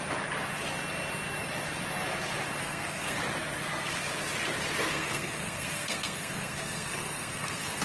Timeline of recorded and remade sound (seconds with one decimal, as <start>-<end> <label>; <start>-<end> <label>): 0.0-2.6 recorded; 2.6-3.2 remade; 3.2-4.9 recorded; 4.9-7.8 remade